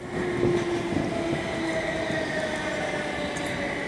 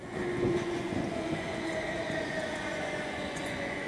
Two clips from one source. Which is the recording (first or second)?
first